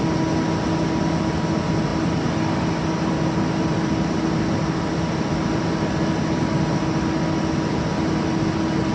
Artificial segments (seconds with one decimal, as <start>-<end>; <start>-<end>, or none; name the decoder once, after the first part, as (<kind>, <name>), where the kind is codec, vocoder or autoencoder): none